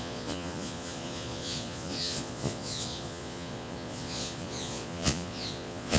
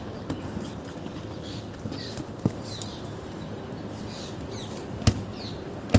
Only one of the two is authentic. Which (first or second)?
second